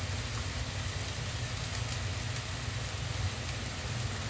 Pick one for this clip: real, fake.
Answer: real